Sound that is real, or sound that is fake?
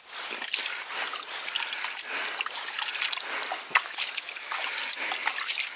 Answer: real